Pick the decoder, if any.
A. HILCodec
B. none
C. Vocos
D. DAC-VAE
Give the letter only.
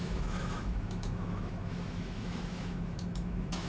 D